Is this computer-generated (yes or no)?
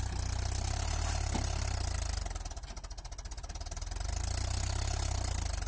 no